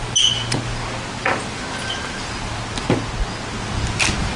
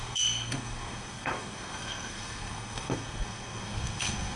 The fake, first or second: second